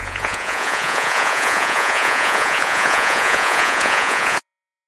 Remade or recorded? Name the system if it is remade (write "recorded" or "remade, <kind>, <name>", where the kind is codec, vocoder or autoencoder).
remade, vocoder, Vocos